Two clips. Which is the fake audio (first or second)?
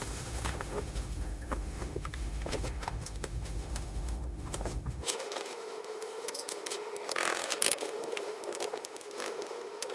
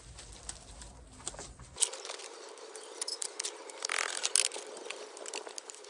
first